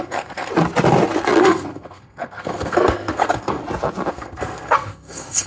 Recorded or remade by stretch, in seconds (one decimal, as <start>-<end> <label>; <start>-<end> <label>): 0.0-0.5 remade; 0.5-1.4 recorded; 1.4-3.6 remade; 3.6-4.1 recorded; 4.1-5.5 remade